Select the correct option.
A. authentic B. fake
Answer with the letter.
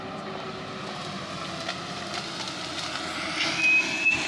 A